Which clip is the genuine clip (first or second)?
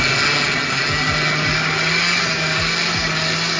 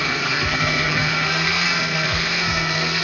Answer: first